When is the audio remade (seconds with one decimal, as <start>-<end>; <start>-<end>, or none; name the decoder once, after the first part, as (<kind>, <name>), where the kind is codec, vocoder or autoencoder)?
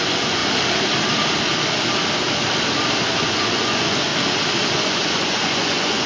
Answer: 0.0-0.4 (vocoder, Vocos); 3.2-4.1; 4.7-6.1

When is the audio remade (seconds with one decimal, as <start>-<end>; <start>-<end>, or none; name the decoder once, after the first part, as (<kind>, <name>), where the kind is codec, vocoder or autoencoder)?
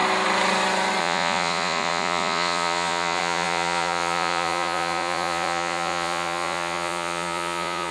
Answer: 1.0-7.9 (vocoder, Vocos)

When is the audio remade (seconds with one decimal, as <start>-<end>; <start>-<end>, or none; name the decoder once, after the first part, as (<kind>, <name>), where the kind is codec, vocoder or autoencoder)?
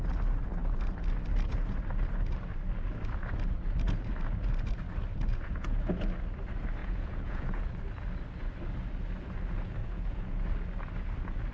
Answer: 5.3-5.8 (vocoder, Vocos); 6.8-7.7; 9.8-10.4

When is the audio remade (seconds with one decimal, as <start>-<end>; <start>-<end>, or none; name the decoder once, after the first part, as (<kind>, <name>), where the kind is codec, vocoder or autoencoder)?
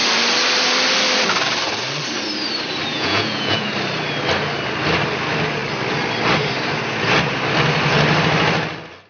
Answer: 2.9-3.7 (vocoder, Vocos)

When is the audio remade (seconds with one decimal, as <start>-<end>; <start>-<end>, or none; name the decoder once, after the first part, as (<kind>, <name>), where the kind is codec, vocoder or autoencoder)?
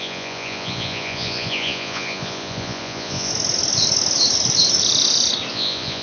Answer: 0.0-3.3 (vocoder, Vocos); 5.5-6.0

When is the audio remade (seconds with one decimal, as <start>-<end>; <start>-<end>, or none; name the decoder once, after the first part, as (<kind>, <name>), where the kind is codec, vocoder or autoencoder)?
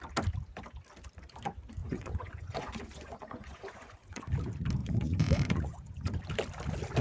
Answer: 1.8-4.3 (vocoder, Vocos); 4.8-6.2